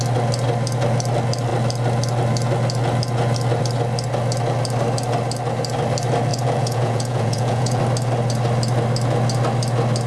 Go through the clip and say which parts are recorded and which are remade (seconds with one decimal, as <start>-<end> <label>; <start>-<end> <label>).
0.0-6.3 recorded; 6.3-7.8 remade; 7.8-10.1 recorded